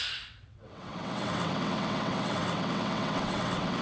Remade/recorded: remade